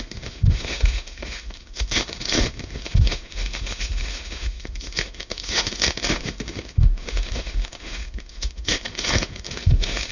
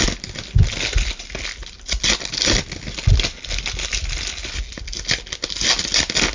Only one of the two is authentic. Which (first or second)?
second